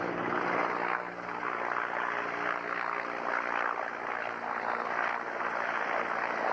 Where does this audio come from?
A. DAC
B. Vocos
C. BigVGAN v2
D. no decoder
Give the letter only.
D